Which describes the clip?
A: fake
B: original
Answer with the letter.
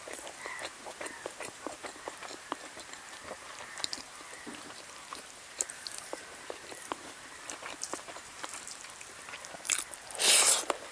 A